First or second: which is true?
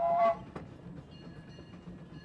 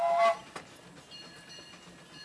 second